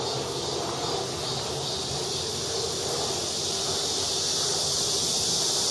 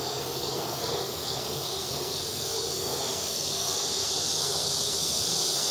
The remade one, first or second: second